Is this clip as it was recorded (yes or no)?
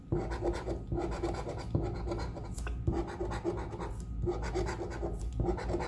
yes